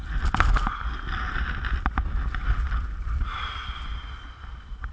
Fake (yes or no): no